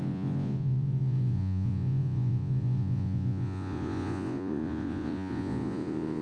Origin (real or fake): fake